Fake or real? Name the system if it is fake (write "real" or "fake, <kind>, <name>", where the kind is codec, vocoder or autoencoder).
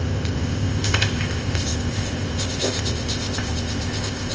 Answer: fake, codec, ZipCodec